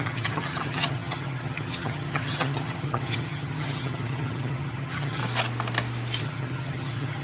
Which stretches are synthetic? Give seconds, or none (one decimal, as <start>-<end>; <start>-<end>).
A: 0.0-5.2; 6.2-7.2